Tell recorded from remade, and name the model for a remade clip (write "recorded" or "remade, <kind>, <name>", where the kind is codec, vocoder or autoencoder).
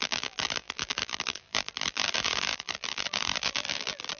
remade, vocoder, BigVGAN v2